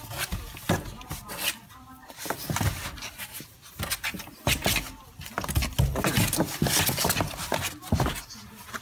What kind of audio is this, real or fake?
real